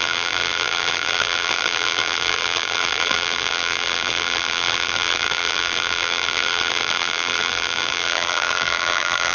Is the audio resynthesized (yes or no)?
yes